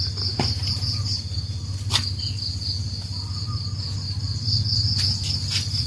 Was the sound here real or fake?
real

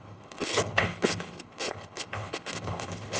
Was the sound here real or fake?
fake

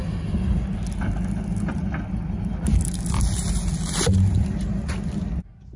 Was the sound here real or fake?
real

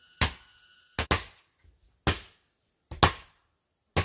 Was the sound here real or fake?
real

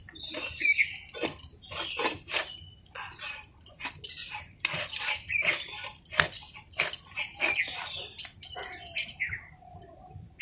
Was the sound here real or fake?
real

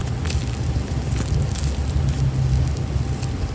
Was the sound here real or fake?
real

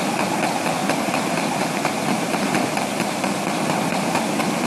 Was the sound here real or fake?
real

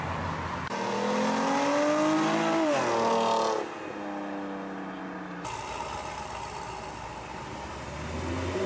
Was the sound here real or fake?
real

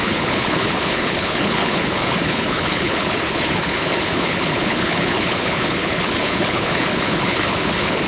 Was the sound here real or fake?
fake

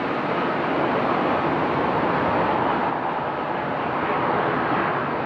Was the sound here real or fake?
real